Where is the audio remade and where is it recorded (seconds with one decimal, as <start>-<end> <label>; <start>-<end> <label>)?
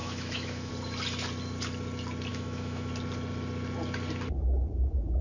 0.0-0.7 remade; 0.7-2.3 recorded; 2.3-2.9 remade; 2.9-5.2 recorded